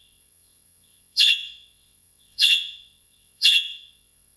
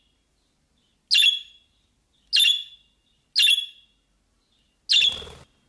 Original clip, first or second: second